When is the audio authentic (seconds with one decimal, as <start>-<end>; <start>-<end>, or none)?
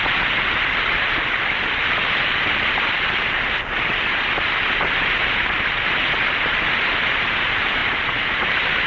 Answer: 0.0-8.9